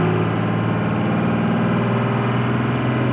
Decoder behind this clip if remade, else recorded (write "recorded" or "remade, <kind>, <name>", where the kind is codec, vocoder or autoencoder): recorded